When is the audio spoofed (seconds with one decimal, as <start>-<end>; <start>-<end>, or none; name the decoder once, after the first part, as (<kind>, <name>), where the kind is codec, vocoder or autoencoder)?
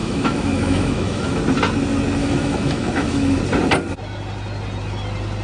0.0-1.4 (autoencoder, DAC-VAE); 2.2-3.4